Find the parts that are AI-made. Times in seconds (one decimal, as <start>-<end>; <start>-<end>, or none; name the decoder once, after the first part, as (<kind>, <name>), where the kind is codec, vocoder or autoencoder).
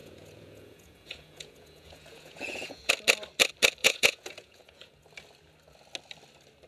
0.0-2.9 (vocoder, Vocos); 3.8-4.9